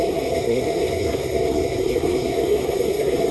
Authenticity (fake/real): fake